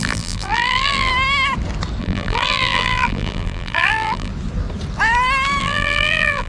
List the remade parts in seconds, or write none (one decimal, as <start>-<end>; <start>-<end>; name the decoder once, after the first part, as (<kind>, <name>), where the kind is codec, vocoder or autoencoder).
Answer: 0.0-1.1 (vocoder, BigVGAN v2); 2.0-4.3; 5.6-6.5